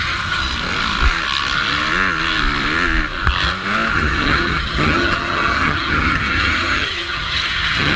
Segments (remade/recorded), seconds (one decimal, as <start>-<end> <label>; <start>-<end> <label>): 0.0-0.4 remade; 0.4-3.9 recorded; 3.9-8.0 remade